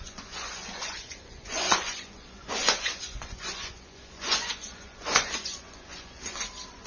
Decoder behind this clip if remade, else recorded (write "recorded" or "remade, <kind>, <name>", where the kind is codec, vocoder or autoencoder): remade, vocoder, Vocos